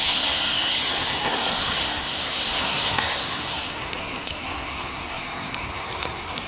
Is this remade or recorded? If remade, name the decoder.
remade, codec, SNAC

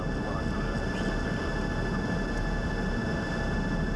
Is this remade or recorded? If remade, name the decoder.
recorded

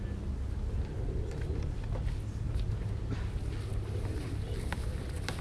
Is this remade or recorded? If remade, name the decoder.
recorded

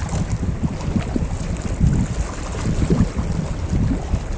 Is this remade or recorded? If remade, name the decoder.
recorded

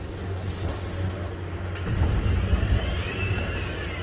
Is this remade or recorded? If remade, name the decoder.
recorded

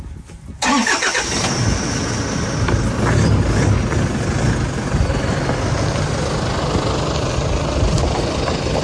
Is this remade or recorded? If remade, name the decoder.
recorded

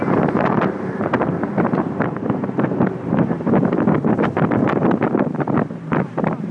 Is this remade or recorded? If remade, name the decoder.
remade, vocoder, BigVGAN v2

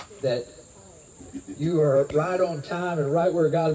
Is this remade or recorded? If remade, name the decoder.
remade, vocoder, BigVGAN v2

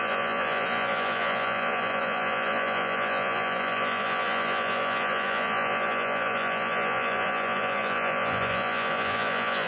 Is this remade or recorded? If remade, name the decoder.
remade, vocoder, Vocos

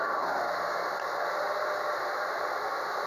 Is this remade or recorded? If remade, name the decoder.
recorded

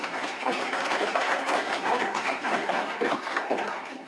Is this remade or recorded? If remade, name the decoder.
remade, codec, SNAC